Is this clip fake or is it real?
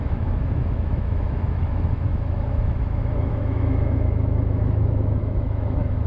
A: fake